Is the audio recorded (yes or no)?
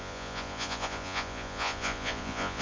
no